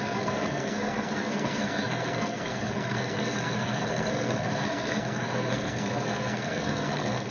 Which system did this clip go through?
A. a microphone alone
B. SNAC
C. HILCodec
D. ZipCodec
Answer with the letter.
B